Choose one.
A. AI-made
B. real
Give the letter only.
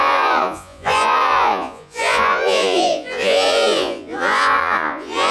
A